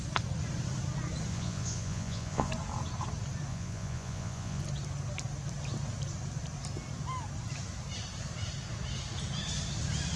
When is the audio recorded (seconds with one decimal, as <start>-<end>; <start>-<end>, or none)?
0.0-1.3; 2.5-3.5; 4.6-10.2

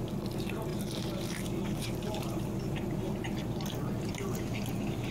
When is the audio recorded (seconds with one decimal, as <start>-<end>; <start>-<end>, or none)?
0.0-5.1

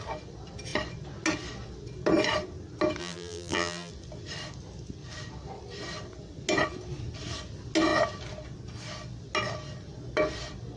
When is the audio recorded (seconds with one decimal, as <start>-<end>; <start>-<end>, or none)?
0.0-3.0; 3.9-10.8

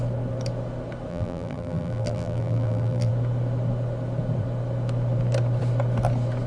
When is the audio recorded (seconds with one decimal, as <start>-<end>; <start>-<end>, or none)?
0.0-1.1; 3.1-6.5

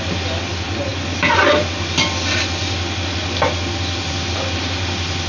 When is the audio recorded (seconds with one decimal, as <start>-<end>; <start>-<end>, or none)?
0.0-5.3